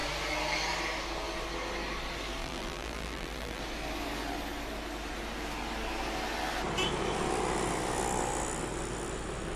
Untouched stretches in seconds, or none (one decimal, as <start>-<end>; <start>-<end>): 0.0-2.4; 3.6-9.6